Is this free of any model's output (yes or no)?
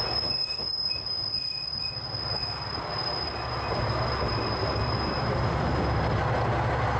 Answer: yes